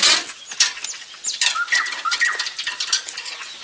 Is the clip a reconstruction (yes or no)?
no